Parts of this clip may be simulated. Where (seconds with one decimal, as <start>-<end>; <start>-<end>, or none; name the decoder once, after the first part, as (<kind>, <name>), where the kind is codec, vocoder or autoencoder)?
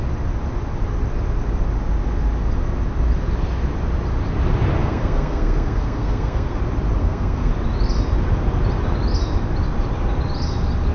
4.8-6.6 (codec, SNAC); 7.0-7.5